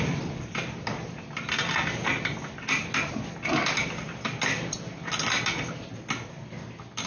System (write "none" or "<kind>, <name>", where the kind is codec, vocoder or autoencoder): none